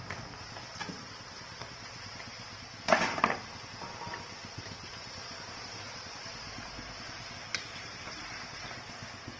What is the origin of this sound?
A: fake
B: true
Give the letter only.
B